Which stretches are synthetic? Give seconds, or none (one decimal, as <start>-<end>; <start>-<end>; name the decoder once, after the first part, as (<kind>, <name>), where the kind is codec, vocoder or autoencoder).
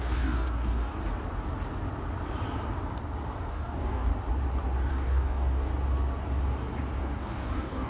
0.0-1.0 (codec, DAC); 3.5-4.1; 4.9-5.7; 7.0-7.9